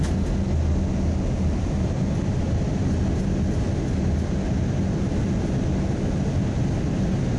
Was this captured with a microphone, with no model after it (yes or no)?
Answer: yes